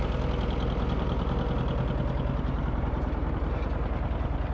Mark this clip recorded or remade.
recorded